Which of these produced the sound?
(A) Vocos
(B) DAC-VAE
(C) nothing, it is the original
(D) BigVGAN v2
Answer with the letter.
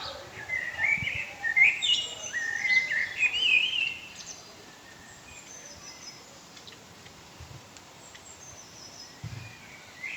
D